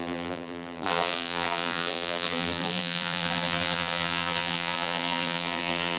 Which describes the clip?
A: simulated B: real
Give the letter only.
A